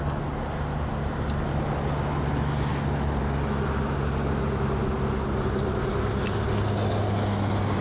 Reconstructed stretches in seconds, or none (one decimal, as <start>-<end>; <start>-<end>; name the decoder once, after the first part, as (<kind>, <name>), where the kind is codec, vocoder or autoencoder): none

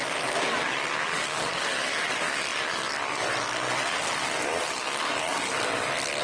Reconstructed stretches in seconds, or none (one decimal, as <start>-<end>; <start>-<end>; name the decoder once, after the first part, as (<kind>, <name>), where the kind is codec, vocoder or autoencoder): none